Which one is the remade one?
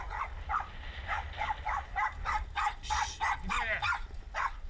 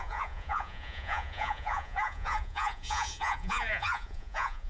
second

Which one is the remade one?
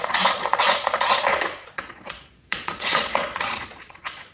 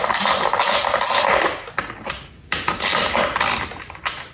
first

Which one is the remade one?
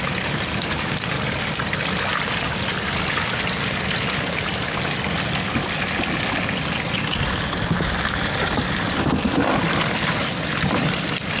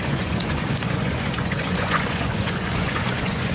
second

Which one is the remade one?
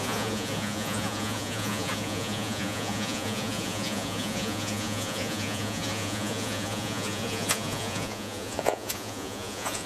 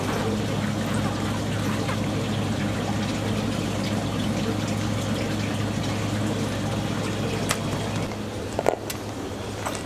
first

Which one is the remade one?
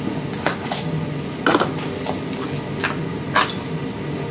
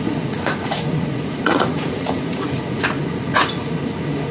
second